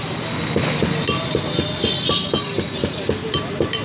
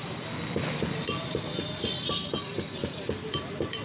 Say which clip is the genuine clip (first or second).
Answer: first